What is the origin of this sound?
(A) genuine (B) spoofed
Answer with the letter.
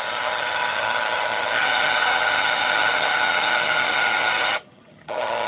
B